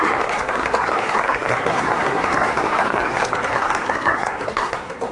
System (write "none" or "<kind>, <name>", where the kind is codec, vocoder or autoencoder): codec, SNAC